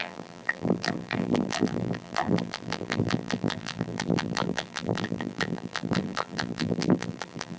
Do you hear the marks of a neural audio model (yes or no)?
yes